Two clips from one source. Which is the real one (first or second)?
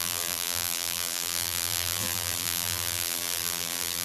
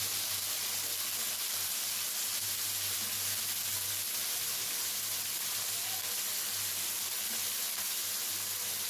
second